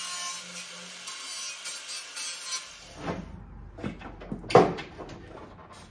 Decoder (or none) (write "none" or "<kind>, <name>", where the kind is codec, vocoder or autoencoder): none